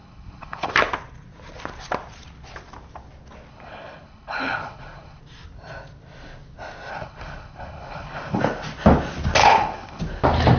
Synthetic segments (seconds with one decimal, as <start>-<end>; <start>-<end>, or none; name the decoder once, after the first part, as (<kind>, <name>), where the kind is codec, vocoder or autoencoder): 0.0-0.7 (codec, HILCodec); 3.5-5.2; 6.9-8.4; 9.4-10.0